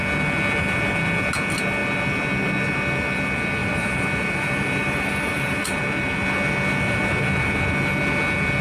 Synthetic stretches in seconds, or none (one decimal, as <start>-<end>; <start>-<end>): 3.6-5.8